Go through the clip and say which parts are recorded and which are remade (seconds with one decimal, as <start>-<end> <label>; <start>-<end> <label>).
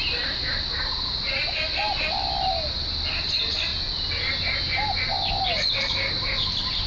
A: 0.0-6.9 recorded